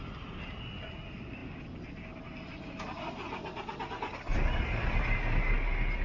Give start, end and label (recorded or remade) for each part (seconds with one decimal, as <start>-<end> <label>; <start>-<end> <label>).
0.0-6.0 recorded